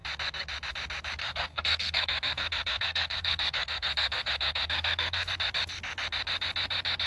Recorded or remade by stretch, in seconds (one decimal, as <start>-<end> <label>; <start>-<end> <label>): 0.0-1.2 recorded; 1.2-5.3 remade; 5.3-7.1 recorded